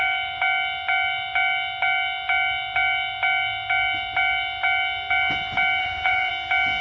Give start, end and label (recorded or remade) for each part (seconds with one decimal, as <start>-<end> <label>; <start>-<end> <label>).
0.0-5.8 recorded; 5.8-6.3 remade; 6.3-6.8 recorded